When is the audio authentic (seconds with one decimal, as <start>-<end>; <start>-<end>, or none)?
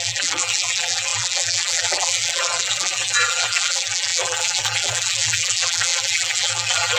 none